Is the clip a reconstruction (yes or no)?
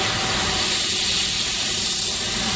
no